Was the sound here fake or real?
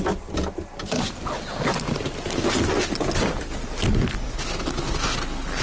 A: real